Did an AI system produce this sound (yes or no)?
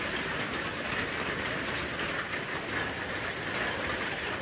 no